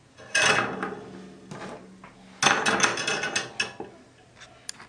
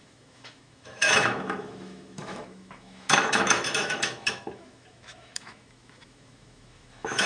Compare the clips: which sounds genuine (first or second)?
first